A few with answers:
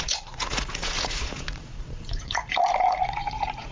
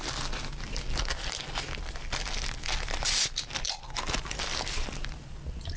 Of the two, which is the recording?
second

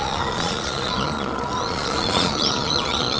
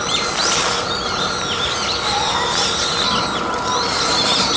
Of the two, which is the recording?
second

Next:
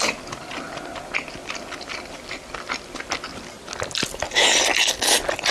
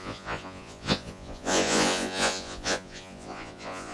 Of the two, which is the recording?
first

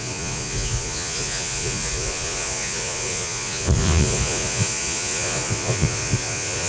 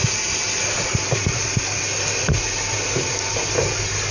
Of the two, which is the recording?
second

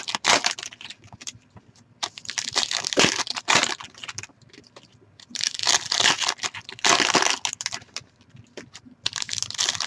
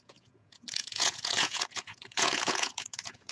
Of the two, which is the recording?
first